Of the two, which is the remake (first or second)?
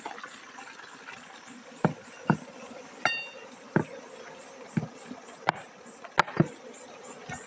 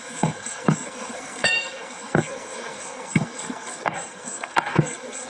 second